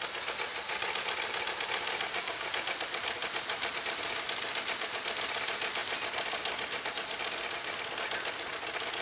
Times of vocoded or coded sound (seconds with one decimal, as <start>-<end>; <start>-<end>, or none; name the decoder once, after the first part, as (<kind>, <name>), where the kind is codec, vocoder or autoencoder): none